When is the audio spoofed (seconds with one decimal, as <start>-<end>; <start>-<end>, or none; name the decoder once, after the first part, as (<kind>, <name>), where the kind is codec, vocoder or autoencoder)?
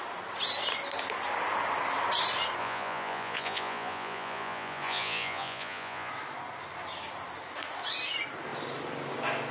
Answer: 2.6-6.1 (vocoder, Vocos)